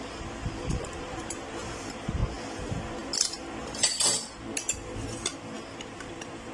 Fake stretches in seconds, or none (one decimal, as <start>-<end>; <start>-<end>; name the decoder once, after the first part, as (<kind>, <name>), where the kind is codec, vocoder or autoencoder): 0.0-2.2 (vocoder, BigVGAN v2); 6.1-6.5